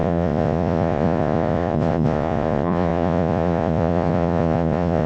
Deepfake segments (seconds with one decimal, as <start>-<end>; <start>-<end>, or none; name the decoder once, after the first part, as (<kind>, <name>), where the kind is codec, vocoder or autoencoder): 0.0-5.1 (vocoder, Vocos)